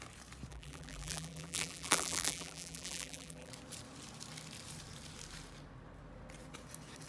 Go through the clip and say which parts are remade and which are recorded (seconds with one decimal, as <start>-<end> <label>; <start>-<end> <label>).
0.0-0.5 recorded; 0.5-3.5 remade; 3.5-7.1 recorded